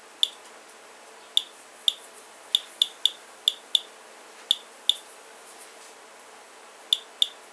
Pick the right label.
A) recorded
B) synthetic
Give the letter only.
A